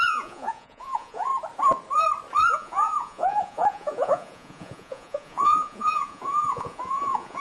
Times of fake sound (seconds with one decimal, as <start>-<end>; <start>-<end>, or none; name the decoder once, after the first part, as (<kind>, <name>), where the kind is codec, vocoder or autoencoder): 0.0-1.3 (vocoder, Vocos); 2.5-7.4